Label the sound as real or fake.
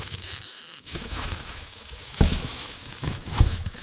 fake